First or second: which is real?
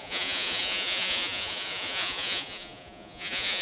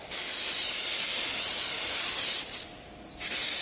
second